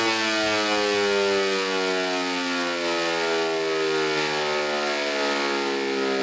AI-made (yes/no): no